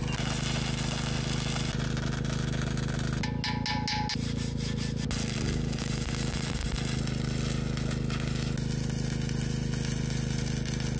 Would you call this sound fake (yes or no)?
no